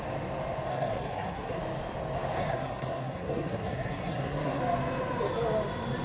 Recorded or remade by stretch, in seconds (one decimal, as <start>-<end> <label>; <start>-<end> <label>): 0.0-0.7 recorded; 0.7-1.6 remade; 1.6-2.4 recorded; 2.4-4.6 remade; 4.6-6.0 recorded